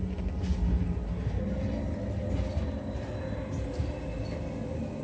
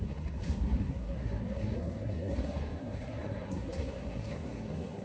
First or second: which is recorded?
first